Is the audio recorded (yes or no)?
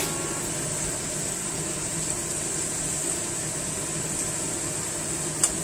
yes